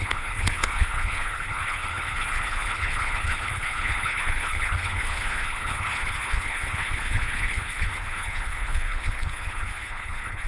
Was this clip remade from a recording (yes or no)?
yes